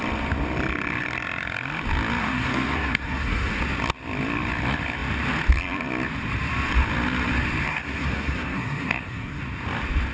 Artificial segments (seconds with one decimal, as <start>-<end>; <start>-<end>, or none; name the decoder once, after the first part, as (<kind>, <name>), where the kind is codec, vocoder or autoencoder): 2.2-3.6 (codec, SNAC); 7.7-9.4